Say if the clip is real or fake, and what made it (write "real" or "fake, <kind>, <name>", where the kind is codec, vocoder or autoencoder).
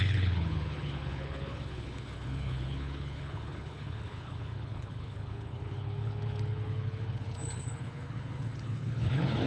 fake, codec, HILCodec